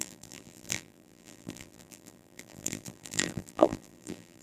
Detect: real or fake fake